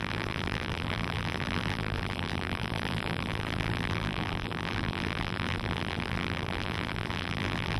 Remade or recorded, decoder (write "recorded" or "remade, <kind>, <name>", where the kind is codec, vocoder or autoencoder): remade, vocoder, BigVGAN v2